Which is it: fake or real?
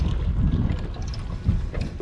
real